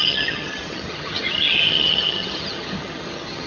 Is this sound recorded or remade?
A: remade